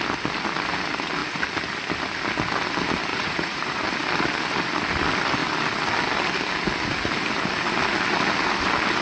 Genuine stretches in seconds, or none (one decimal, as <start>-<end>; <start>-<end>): 0.0-3.1; 3.8-9.0